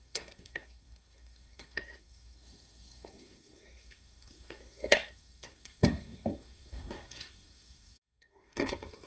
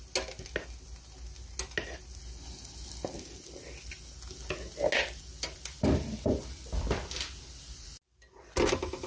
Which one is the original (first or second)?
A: second